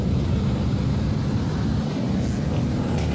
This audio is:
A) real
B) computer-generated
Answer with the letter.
A